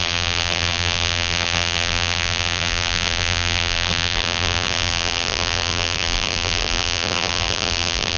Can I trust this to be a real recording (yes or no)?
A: no